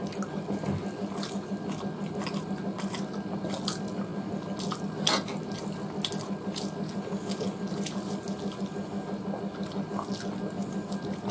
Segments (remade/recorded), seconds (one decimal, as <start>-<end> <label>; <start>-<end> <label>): 0.0-11.3 recorded